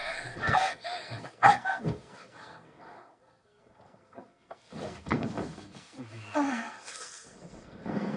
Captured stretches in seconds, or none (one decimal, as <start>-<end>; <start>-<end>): none